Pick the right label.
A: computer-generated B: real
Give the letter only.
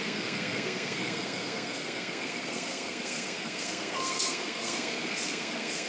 A